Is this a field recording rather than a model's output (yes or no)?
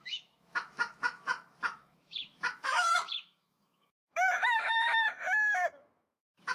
no